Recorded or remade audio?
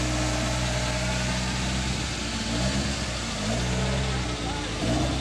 recorded